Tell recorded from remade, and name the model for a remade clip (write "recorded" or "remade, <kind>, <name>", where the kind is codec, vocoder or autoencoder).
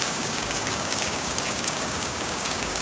remade, codec, DAC